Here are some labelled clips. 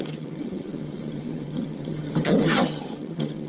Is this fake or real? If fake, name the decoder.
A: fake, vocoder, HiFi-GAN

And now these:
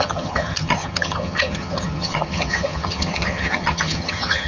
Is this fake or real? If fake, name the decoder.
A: fake, vocoder, HiFi-GAN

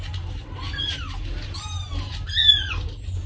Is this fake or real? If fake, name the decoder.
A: real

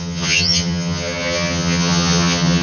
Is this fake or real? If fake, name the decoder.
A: fake, vocoder, HiFi-GAN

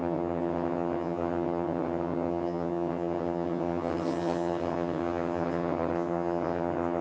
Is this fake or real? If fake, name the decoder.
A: fake, vocoder, HiFi-GAN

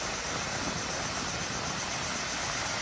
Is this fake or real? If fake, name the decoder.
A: real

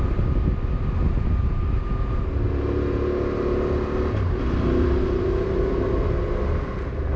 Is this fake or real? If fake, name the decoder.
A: real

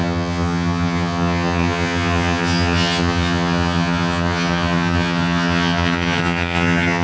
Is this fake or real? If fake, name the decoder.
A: fake, vocoder, HiFi-GAN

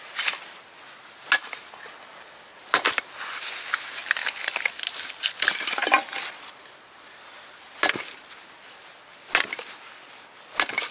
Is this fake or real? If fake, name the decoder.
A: real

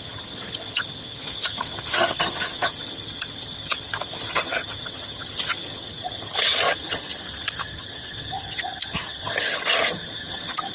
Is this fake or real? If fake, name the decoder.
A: fake, vocoder, HiFi-GAN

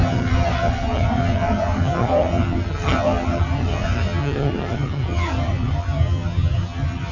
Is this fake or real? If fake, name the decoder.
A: fake, vocoder, HiFi-GAN